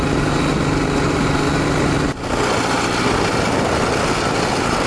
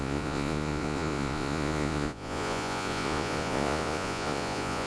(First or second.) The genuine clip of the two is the first